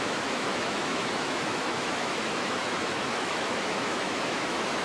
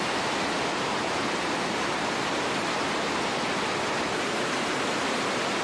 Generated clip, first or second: first